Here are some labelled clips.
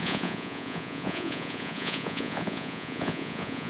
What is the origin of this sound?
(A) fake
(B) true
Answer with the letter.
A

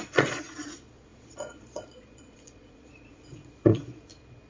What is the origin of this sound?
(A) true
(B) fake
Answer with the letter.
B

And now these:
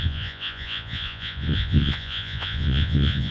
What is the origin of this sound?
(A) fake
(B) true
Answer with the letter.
A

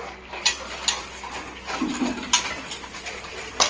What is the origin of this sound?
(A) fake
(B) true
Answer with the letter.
B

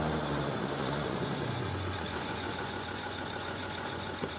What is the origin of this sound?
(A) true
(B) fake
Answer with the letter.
B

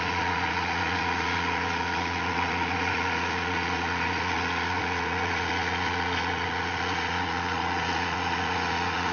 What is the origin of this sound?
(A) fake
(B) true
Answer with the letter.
A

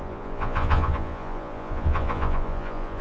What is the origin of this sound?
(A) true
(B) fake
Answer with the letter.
B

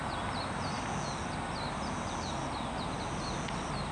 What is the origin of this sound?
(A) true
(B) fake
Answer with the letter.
A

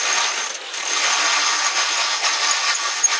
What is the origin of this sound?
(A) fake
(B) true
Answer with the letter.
B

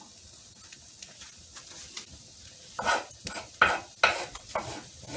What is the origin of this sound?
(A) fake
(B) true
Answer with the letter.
B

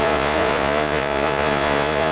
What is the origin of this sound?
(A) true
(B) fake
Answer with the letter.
B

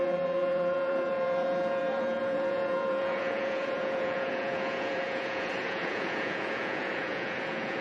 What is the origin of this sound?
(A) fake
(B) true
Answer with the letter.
A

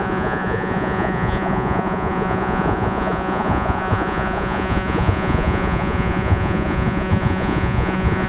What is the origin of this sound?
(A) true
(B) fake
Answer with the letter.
B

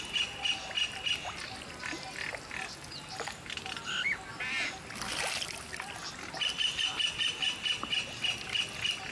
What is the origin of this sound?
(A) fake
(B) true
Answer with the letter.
B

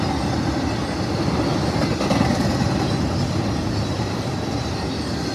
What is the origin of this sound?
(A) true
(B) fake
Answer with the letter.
A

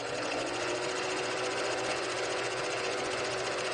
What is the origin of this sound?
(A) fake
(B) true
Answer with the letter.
A